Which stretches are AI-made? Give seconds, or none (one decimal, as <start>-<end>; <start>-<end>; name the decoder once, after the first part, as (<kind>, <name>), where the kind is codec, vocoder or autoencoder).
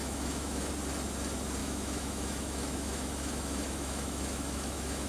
0.0-0.7 (autoencoder, DAC-VAE); 1.6-5.1